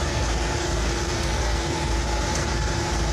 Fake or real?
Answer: fake